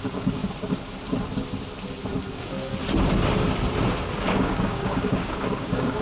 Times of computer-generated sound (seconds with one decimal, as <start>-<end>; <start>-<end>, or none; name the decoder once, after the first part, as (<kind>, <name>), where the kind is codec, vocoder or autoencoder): 0.0-0.4 (codec, DAC); 2.3-2.7; 4.2-6.0